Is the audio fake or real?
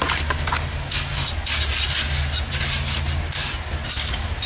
real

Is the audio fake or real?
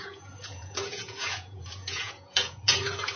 fake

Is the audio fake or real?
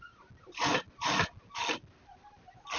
real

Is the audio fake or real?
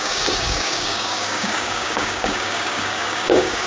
fake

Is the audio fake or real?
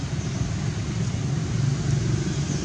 real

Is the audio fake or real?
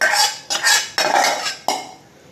real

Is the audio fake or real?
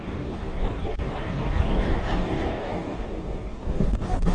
fake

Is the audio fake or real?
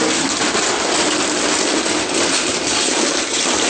real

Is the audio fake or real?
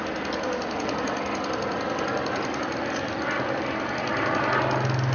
real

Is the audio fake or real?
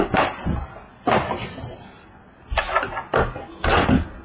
real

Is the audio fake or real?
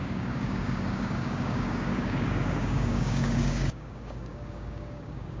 fake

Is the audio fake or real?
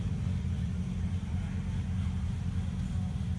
real